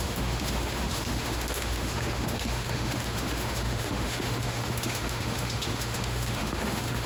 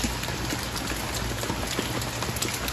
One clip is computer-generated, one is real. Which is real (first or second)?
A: second